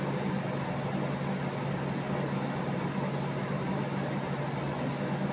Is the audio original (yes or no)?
yes